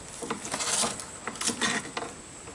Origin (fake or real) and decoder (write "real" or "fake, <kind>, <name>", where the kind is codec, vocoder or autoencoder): real